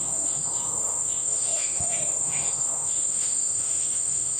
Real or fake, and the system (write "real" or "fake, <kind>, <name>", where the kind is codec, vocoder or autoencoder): fake, autoencoder, DAC-VAE